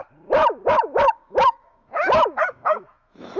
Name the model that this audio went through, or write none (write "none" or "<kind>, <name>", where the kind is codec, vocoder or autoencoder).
autoencoder, DAC-VAE